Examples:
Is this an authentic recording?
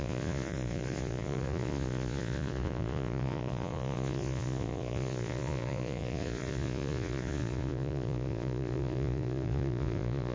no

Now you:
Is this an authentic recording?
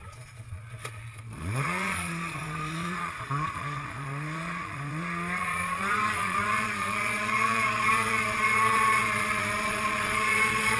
no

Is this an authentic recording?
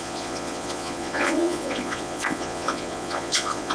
no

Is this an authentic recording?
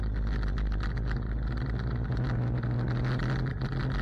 yes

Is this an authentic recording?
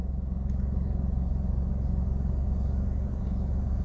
yes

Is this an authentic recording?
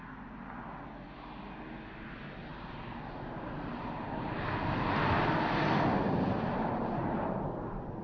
yes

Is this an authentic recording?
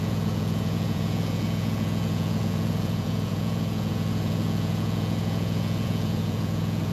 no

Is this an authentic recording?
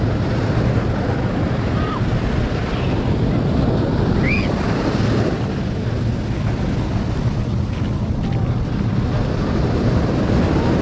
yes